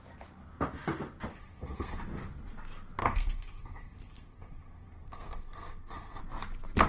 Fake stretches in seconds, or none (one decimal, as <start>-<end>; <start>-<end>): 1.3-2.0; 3.0-6.2